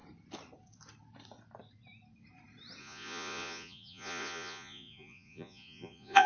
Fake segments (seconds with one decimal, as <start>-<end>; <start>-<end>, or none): 2.8-6.3

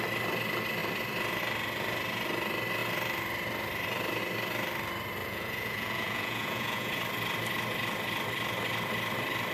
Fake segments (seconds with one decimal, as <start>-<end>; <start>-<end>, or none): 5.2-7.0

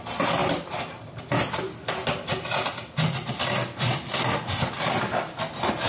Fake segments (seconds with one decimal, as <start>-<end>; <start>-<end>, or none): 0.4-1.4

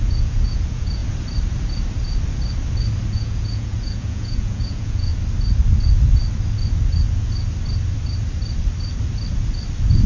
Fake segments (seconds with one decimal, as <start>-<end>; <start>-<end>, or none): 0.0-1.0; 3.1-5.1

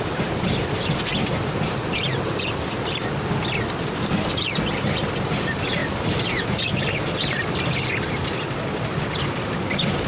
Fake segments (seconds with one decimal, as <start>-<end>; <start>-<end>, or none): none

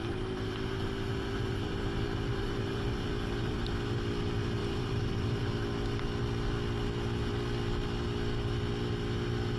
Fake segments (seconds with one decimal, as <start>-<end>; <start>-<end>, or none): 0.0-3.6; 4.6-5.4

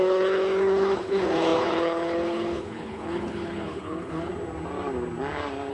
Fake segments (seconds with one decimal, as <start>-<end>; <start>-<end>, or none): 0.0-4.3

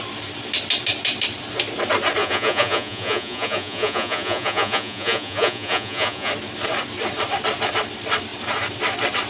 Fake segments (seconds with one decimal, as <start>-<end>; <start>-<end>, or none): 2.2-6.3